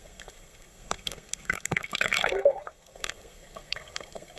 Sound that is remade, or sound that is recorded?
remade